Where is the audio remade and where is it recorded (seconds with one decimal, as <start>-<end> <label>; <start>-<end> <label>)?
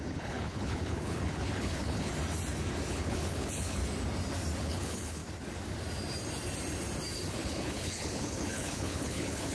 0.0-2.1 remade; 2.1-2.9 recorded; 2.9-3.8 remade; 3.8-4.6 recorded; 4.6-5.2 remade; 5.2-7.3 recorded; 7.3-9.5 remade